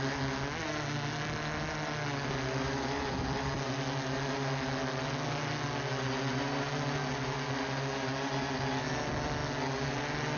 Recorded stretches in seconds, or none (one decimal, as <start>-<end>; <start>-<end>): 0.0-10.4